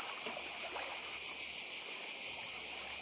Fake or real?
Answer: real